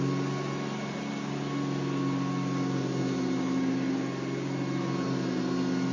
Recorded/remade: recorded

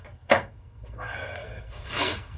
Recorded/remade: remade